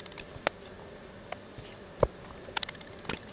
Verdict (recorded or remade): recorded